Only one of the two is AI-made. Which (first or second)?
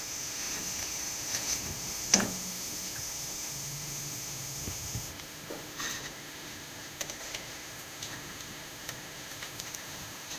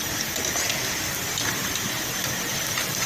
first